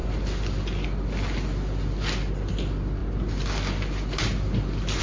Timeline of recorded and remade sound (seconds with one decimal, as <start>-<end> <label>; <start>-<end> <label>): 0.0-5.0 recorded